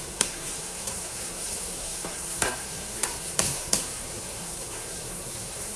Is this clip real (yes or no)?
no